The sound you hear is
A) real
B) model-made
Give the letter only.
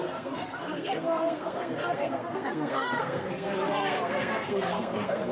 B